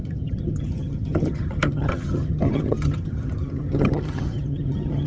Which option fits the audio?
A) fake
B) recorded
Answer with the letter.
A